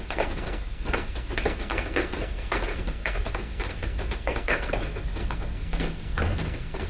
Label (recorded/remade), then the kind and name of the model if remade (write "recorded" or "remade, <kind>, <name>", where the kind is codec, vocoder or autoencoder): remade, codec, SNAC